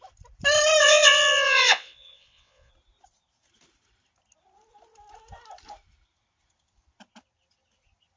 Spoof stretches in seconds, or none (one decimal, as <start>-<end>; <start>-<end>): 0.8-2.7